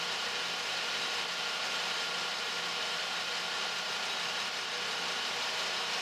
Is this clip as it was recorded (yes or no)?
yes